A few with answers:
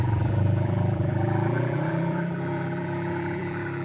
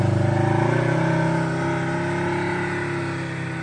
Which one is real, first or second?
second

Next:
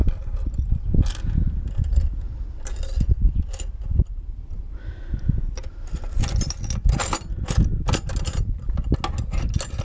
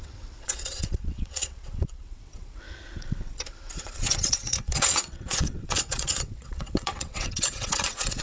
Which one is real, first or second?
first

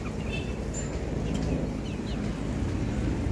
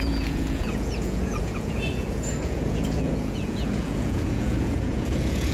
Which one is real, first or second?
first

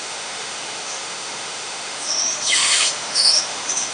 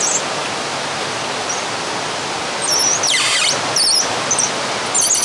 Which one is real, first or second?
second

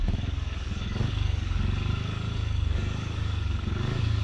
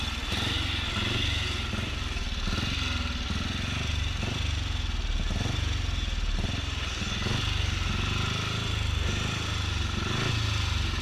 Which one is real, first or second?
second